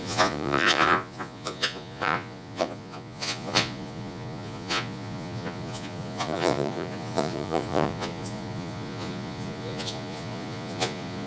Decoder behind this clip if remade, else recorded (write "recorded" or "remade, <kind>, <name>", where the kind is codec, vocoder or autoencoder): remade, vocoder, Vocos